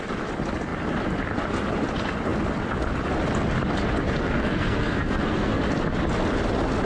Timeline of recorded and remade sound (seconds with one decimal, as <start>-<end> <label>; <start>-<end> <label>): 0.0-4.0 recorded; 4.0-5.6 remade; 5.6-6.9 recorded